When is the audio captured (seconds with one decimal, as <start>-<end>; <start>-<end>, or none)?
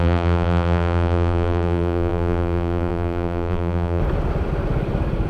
4.0-5.3